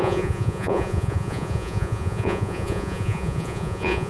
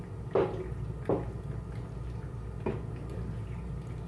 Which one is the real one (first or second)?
second